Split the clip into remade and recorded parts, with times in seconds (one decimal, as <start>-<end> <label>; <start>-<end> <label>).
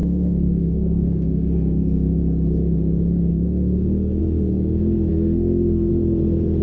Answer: 0.0-2.2 remade; 2.2-3.3 recorded; 3.3-4.2 remade; 4.2-5.1 recorded; 5.1-5.9 remade; 5.9-6.6 recorded